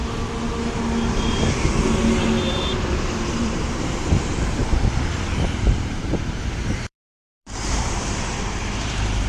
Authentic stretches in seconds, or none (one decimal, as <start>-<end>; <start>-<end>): 0.0-2.5; 4.6-5.6